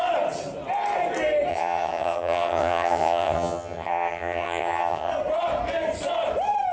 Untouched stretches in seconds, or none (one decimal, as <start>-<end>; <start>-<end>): 0.0-1.5; 5.1-6.7